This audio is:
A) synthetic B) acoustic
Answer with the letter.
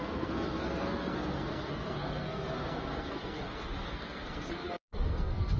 A